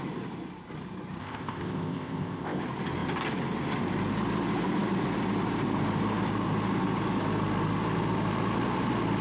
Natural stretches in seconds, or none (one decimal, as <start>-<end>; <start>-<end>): 0.0-1.2; 2.6-9.2